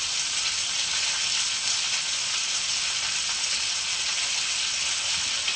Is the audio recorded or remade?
recorded